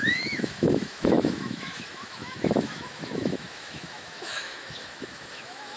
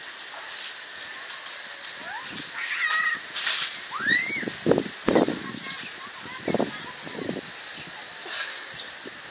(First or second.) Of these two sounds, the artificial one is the first